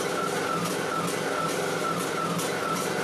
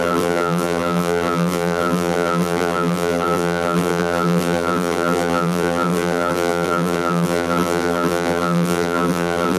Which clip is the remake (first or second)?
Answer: second